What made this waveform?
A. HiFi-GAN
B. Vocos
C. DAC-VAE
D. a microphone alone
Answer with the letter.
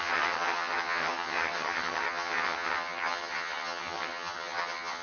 A